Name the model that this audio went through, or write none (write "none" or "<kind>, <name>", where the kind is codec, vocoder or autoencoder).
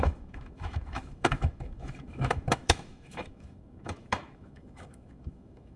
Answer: autoencoder, DAC-VAE